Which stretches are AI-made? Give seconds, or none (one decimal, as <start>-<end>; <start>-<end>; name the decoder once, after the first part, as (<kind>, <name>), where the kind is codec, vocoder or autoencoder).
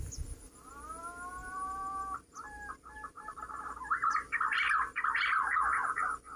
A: 1.4-3.4 (vocoder, BigVGAN v2)